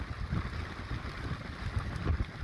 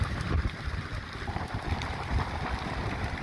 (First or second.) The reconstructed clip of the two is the second